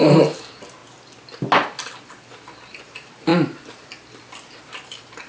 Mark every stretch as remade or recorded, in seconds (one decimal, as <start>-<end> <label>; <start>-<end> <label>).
0.0-0.8 remade; 0.8-2.1 recorded; 2.1-3.3 remade; 3.3-4.6 recorded; 4.6-5.3 remade